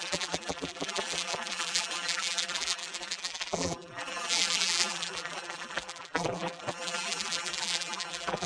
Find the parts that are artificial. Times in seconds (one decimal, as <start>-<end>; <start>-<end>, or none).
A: 0.0-8.5